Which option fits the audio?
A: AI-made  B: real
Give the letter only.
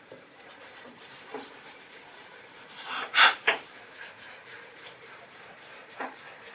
A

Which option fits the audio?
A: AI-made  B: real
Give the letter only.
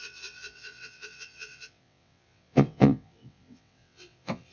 A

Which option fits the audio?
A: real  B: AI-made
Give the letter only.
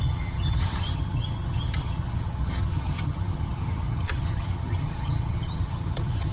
B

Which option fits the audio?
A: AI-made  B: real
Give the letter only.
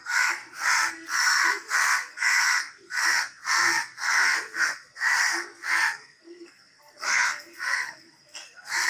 A